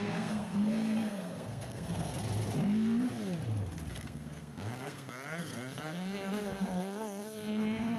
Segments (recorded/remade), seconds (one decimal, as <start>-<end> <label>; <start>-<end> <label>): 0.0-2.2 remade; 2.2-3.9 recorded; 3.9-8.0 remade